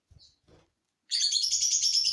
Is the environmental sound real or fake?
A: fake